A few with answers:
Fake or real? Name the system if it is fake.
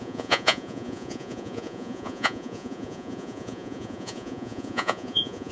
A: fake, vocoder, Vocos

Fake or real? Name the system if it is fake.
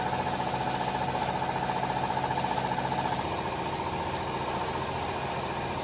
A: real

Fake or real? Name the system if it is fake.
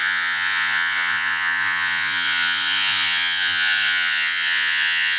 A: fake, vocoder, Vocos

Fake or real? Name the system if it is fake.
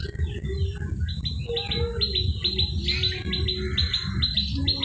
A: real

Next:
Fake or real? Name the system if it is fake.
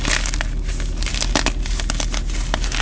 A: real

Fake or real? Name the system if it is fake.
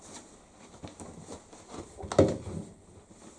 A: real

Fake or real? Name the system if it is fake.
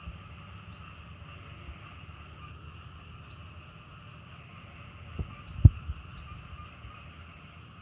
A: real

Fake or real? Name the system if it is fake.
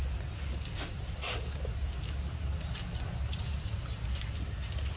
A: real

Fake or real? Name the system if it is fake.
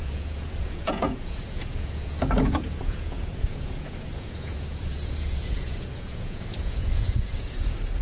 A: fake, vocoder, Vocos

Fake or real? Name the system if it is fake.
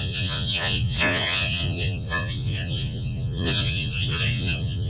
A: fake, vocoder, Vocos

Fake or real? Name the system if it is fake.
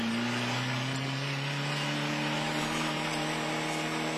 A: real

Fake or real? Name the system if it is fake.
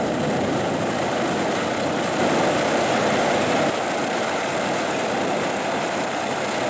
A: real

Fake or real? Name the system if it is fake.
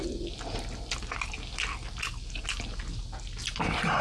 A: real